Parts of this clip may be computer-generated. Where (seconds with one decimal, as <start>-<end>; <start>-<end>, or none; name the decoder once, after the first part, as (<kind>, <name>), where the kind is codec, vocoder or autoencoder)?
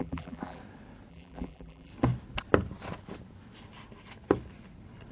0.0-0.6 (vocoder, BigVGAN v2); 1.1-1.9